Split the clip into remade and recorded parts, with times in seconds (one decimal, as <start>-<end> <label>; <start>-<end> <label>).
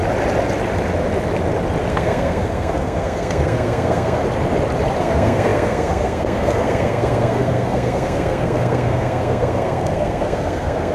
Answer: 0.0-1.9 recorded; 1.9-4.2 remade; 4.2-5.0 recorded; 5.0-10.9 remade